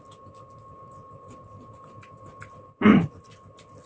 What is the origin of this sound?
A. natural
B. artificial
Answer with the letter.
A